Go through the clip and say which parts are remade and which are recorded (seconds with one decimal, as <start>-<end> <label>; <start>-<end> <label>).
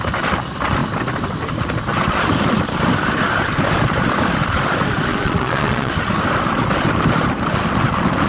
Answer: 0.0-5.1 recorded; 5.1-5.9 remade; 5.9-8.3 recorded